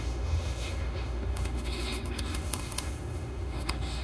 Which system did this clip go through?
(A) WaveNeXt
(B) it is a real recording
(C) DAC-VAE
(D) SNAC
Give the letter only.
C